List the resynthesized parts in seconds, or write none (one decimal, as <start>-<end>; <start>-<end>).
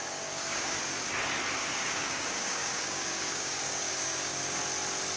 0.0-0.8; 1.6-4.6